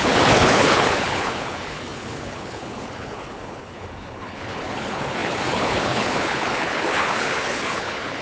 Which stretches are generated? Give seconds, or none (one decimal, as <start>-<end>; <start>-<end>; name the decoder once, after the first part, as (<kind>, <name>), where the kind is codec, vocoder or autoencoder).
0.0-8.2 (codec, HILCodec)